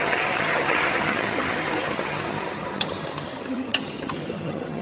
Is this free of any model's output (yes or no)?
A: no